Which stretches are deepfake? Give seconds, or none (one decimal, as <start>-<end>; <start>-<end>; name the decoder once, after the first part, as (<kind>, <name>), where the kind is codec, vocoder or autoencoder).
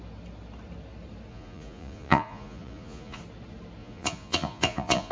1.3-3.2 (vocoder, Vocos); 3.8-5.1